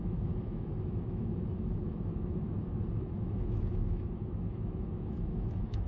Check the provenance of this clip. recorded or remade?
remade